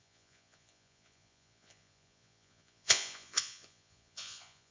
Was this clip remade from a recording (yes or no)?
yes